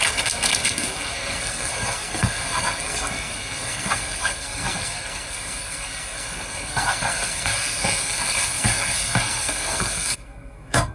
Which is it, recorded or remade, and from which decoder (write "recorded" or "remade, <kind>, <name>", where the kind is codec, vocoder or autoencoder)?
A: remade, codec, SNAC